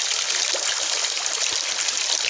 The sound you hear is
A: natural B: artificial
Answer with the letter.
A